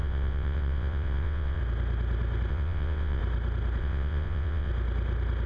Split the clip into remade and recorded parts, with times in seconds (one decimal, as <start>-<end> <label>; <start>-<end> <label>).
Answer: 0.0-1.6 remade; 1.6-2.5 recorded; 2.5-3.2 remade; 3.2-3.8 recorded; 3.8-4.7 remade; 4.7-5.5 recorded